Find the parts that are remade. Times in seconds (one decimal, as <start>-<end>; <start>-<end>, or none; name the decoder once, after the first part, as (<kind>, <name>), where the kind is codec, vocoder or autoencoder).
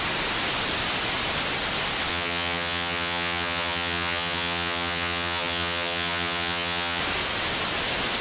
2.1-7.0 (vocoder, HiFi-GAN)